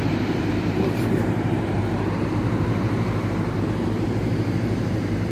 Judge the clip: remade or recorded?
remade